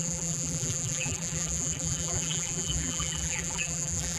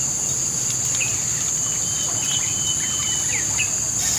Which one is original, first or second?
second